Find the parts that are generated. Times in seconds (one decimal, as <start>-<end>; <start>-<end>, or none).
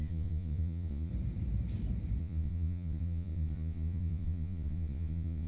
0.0-1.1; 2.2-5.5